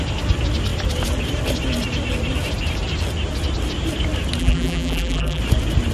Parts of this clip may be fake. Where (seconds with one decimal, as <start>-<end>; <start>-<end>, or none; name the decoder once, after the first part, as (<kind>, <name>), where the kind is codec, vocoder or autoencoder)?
4.4-5.4 (vocoder, BigVGAN v2)